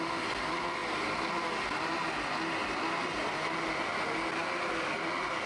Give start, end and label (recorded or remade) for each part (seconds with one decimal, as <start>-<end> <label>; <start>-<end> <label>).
0.0-5.5 recorded

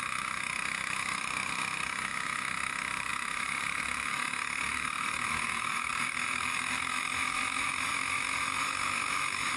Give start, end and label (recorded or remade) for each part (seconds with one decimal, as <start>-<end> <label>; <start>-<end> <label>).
0.0-9.6 remade

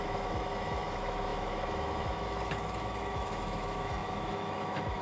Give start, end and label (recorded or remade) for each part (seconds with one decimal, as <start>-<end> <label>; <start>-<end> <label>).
0.0-5.0 remade

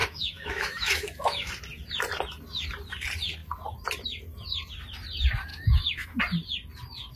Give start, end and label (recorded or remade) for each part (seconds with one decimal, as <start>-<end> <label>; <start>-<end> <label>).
0.0-1.5 remade; 1.5-5.5 recorded; 5.5-6.2 remade; 6.2-7.2 recorded